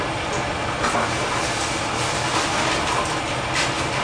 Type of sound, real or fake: real